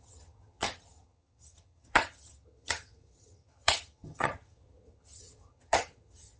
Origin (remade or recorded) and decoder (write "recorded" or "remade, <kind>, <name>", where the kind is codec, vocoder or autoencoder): remade, vocoder, HiFi-GAN